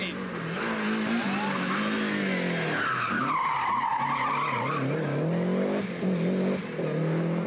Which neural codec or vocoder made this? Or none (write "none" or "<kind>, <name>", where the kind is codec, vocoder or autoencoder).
none